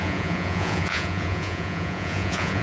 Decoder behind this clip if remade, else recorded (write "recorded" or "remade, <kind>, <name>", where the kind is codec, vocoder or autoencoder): remade, vocoder, Vocos